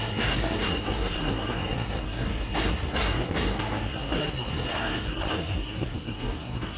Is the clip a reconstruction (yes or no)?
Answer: yes